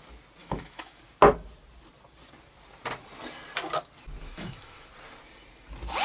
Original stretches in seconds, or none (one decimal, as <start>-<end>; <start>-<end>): 0.0-0.4; 1.0-4.2; 4.9-6.0